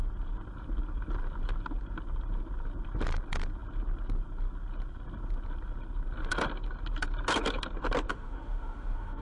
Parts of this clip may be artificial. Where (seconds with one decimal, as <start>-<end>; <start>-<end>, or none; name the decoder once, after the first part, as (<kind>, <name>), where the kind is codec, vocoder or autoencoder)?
8.1-9.2 (autoencoder, DAC-VAE)